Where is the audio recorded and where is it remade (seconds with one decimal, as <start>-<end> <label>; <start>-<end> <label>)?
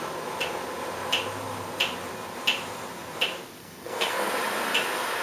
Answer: 0.0-3.6 recorded; 3.6-4.3 remade; 4.3-5.2 recorded